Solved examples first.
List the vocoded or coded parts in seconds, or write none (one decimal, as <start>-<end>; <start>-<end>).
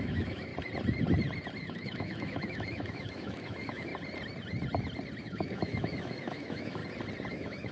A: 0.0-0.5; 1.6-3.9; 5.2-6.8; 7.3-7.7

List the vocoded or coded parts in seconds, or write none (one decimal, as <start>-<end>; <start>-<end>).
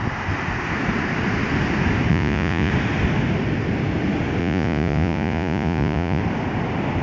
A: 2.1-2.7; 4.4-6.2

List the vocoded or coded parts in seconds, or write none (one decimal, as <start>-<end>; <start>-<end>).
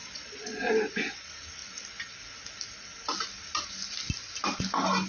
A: 0.0-0.6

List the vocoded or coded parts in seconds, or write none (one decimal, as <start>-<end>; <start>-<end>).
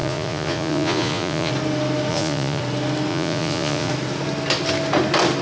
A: 0.0-1.5; 2.1-2.6; 3.1-3.9